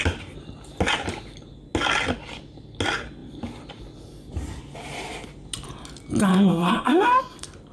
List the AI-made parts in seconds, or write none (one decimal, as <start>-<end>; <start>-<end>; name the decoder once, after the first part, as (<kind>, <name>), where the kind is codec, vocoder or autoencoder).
6.3-7.2 (codec, SNAC)